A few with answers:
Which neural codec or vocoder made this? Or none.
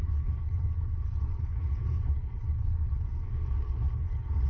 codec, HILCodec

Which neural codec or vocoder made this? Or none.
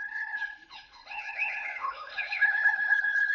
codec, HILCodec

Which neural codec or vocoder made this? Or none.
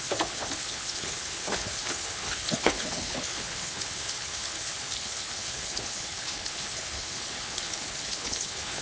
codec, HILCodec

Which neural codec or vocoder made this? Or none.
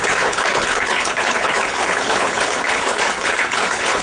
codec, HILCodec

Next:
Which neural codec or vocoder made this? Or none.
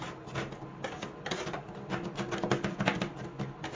none